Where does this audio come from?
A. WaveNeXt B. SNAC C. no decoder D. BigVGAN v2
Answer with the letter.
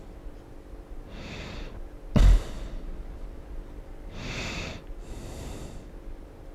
C